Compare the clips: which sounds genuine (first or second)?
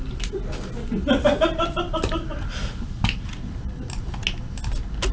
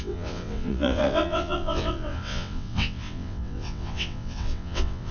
first